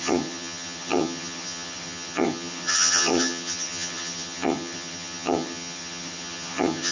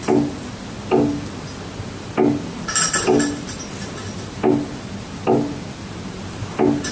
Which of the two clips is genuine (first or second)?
second